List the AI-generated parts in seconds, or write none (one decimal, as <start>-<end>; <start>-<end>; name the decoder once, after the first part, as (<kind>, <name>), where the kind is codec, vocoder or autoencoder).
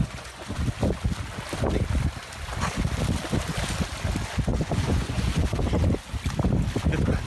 0.0-0.6 (vocoder, Vocos); 4.5-5.6